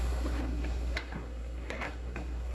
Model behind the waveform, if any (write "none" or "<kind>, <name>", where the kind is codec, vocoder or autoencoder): codec, SNAC